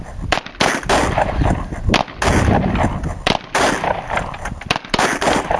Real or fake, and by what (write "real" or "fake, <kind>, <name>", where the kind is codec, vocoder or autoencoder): real